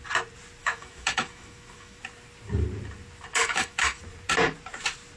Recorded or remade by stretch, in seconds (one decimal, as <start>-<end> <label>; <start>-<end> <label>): 0.0-0.6 recorded; 0.6-2.0 remade; 2.0-3.4 recorded; 3.4-4.0 remade; 4.0-5.2 recorded